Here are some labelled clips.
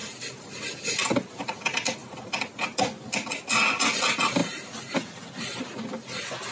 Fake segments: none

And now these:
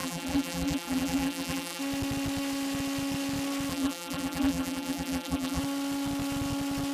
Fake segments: 0.0-1.8 (vocoder, BigVGAN v2); 3.7-5.6

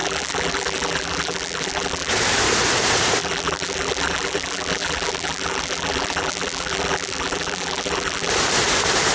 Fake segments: 0.0-2.1 (vocoder, BigVGAN v2); 3.2-8.3

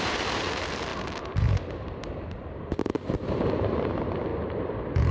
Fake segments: 0.0-4.3 (vocoder, BigVGAN v2)